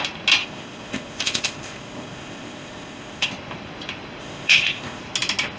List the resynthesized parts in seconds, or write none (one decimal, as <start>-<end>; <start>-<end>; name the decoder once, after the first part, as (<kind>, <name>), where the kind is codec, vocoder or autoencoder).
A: 0.4-3.3 (codec, ZipCodec); 4.2-5.0